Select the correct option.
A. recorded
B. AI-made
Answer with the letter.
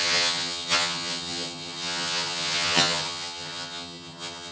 B